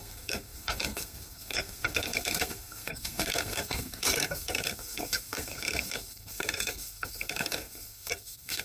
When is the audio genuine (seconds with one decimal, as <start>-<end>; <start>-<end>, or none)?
none

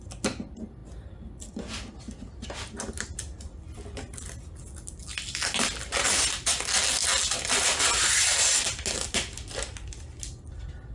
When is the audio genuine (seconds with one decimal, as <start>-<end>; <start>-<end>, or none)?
0.0-10.9